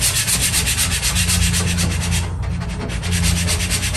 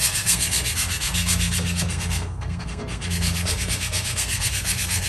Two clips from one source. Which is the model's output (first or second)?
second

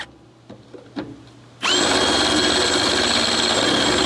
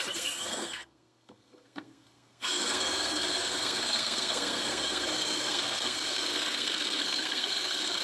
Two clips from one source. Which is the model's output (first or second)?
second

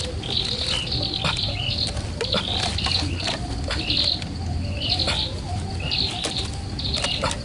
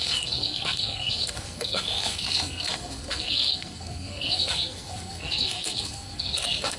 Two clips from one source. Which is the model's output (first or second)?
second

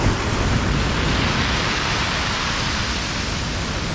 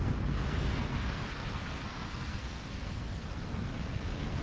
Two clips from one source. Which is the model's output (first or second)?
second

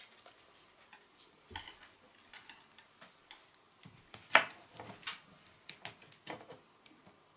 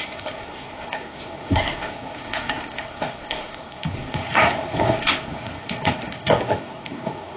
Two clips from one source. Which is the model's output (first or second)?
second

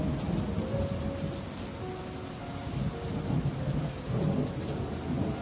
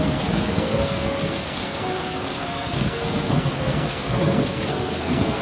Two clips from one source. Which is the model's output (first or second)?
second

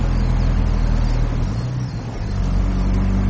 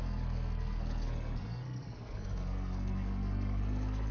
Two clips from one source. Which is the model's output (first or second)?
second